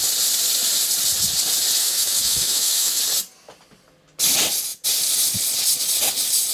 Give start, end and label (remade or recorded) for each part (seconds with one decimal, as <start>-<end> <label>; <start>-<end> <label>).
0.0-1.8 recorded; 1.8-3.0 remade; 3.0-6.5 recorded